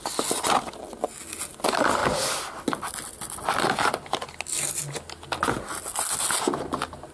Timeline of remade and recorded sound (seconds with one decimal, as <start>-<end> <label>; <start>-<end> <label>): 0.0-7.1 recorded